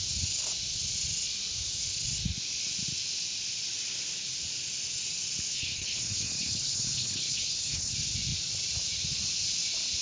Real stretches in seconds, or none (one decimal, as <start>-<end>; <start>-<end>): 0.0-5.5; 7.9-10.0

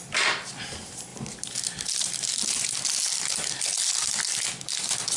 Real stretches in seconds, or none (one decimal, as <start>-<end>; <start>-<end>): 0.0-5.2

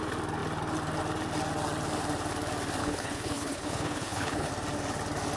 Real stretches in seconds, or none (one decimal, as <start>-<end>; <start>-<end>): 0.0-2.8; 4.5-5.4

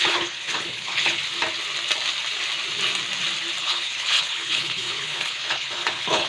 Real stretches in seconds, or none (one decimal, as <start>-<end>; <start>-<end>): 1.2-3.6

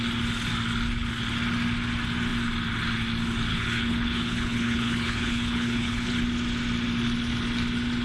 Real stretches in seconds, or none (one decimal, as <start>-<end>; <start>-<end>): 0.0-3.5; 6.2-8.0